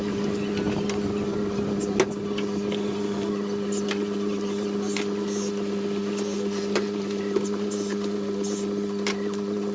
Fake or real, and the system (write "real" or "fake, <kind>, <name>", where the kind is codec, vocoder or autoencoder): real